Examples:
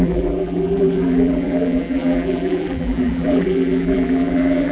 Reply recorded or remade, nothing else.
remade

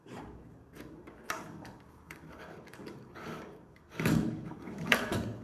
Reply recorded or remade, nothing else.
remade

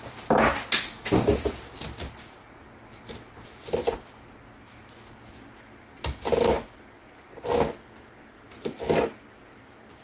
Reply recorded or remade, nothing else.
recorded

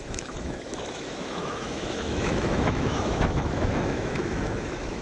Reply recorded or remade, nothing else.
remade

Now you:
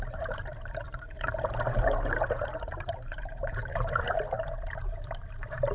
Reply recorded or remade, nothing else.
remade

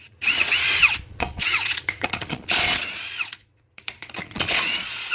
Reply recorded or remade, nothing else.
remade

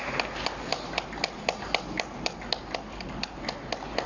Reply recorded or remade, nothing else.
recorded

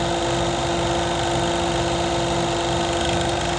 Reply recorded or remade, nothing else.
recorded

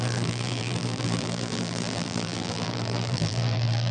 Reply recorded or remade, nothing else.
remade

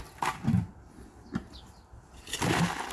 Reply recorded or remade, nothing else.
recorded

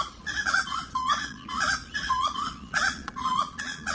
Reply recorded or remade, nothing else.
remade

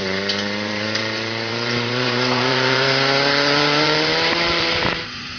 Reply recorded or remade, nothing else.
remade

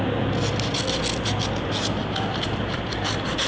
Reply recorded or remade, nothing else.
recorded